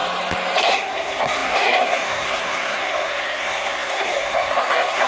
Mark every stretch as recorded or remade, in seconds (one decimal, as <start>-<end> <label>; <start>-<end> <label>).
0.0-0.6 recorded; 0.6-5.1 remade